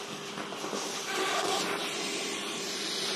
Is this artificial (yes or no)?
no